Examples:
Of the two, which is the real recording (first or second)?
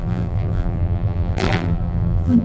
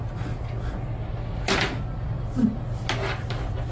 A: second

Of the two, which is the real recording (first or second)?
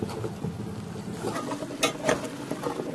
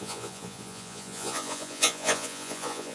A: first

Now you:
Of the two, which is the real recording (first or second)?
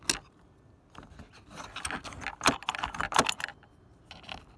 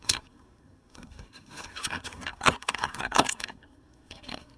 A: first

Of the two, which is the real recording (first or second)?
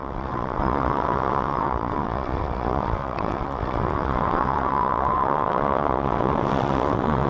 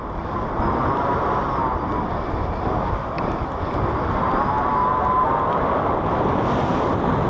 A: second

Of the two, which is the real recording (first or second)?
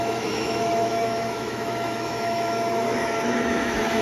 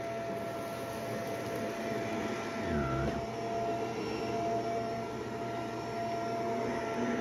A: second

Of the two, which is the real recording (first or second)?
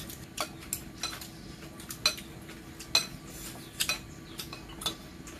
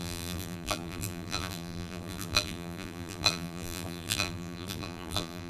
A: first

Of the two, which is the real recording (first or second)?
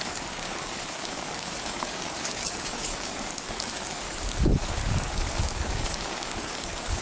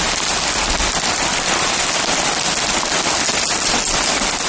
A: second